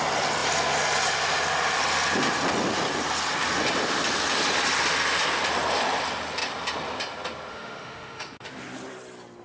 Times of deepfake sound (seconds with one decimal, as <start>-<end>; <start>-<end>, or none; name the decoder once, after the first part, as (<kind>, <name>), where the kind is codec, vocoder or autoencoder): 7.5-8.5 (autoencoder, DAC-VAE)